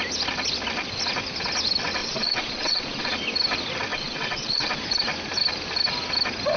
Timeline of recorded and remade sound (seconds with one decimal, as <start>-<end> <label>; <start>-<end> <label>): 0.0-2.0 recorded; 2.0-3.1 remade; 3.1-3.9 recorded; 3.9-4.8 remade; 4.8-6.6 recorded